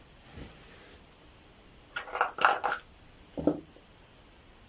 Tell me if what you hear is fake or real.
fake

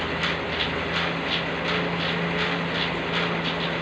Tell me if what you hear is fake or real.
real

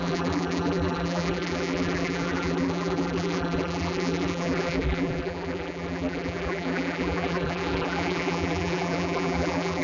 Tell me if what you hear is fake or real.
fake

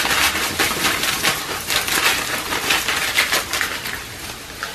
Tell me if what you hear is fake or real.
real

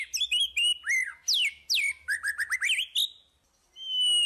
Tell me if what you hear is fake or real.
real